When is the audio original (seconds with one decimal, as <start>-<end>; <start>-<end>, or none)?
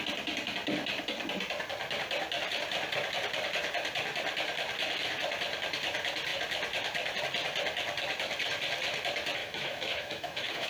0.0-9.4